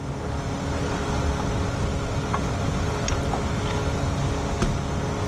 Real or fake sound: real